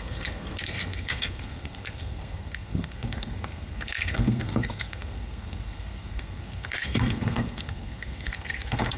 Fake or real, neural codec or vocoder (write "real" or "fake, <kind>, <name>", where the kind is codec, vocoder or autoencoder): fake, codec, SNAC